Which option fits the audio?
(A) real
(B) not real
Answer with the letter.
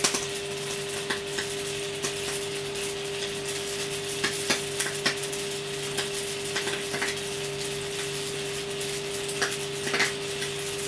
A